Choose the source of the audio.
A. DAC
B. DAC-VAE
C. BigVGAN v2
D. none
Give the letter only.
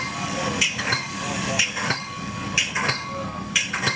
A